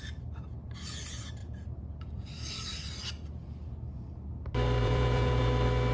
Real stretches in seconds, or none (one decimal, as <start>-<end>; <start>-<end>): 0.0-1.4; 2.3-4.8; 5.4-5.9